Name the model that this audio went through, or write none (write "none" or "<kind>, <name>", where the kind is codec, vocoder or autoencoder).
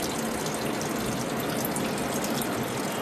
none